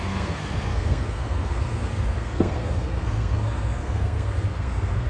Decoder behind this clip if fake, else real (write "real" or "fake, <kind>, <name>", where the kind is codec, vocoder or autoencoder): fake, codec, SNAC